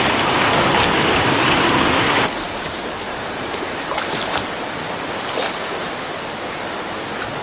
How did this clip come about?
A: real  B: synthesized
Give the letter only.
A